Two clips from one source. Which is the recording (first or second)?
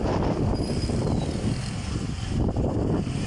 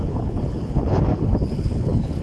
first